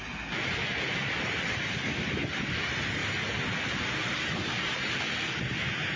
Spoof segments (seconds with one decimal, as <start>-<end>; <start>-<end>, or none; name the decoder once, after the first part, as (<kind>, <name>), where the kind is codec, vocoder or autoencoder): none